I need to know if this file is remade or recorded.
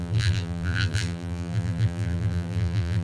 remade